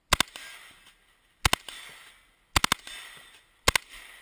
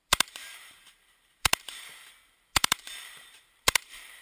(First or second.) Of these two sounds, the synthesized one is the second